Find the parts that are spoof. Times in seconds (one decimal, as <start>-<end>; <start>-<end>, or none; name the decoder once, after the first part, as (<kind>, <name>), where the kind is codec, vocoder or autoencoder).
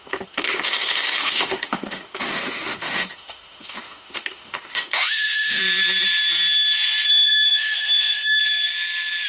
0.0-5.6 (autoencoder, DAC-VAE); 7.1-8.4